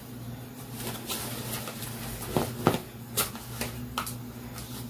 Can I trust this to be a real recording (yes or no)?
yes